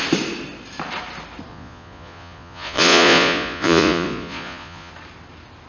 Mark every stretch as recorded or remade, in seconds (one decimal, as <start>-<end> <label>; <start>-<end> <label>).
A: 0.0-1.5 recorded; 1.5-4.9 remade; 4.9-5.7 recorded